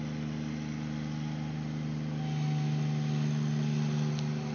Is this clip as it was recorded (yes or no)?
yes